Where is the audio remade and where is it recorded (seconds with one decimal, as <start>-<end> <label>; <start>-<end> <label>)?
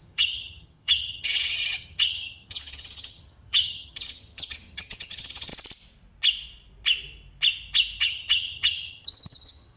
0.0-5.5 remade; 5.5-8.0 recorded; 8.0-9.8 remade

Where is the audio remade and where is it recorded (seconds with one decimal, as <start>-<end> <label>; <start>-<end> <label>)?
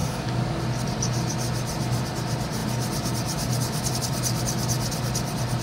0.0-0.6 remade; 0.6-5.6 recorded